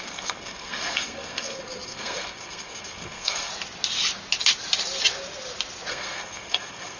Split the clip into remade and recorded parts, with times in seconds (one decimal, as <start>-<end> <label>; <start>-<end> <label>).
0.0-3.5 remade; 3.5-5.9 recorded; 5.9-7.0 remade